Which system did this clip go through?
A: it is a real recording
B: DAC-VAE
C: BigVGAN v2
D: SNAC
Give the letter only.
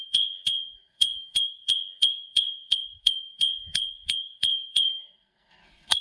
D